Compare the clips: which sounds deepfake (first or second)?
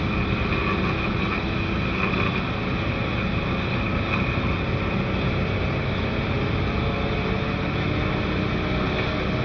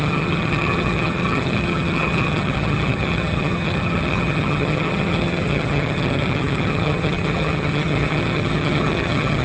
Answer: second